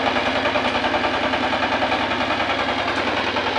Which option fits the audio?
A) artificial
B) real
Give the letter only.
B